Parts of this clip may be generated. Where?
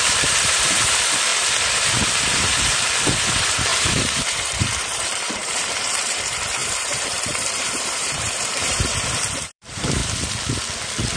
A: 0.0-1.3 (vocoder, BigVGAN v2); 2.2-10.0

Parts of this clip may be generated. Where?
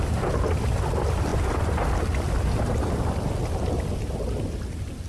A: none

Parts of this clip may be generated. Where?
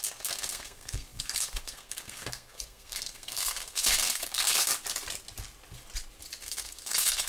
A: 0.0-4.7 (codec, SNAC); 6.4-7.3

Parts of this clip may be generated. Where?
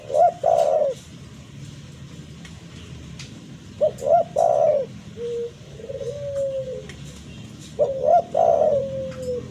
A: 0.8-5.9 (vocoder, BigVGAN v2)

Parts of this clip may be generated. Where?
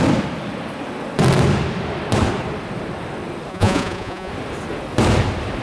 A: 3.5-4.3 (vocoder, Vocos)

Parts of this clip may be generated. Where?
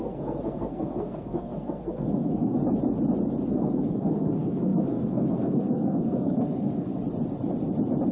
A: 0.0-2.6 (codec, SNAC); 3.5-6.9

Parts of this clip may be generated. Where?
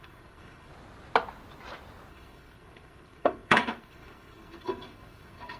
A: 0.0-0.7 (codec, SNAC); 2.1-5.6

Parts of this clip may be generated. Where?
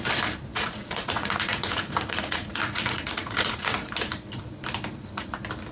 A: 0.5-3.9 (vocoder, Vocos)